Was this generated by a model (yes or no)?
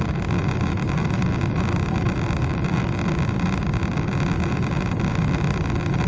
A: no